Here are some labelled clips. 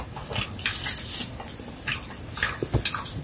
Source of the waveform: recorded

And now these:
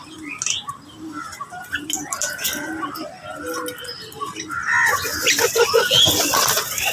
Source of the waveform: recorded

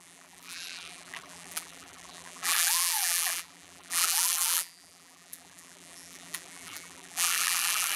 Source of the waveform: remade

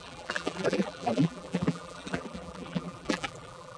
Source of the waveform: remade